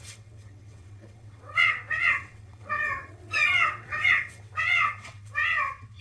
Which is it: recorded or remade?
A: remade